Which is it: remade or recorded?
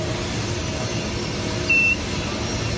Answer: recorded